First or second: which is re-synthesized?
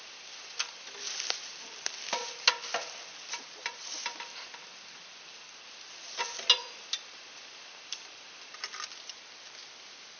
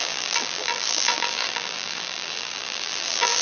second